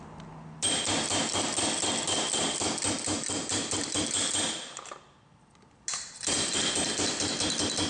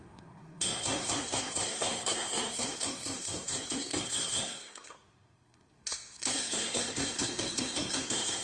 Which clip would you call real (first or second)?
first